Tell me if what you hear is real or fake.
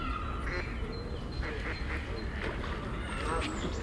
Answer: real